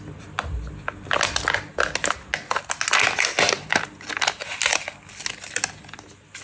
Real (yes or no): yes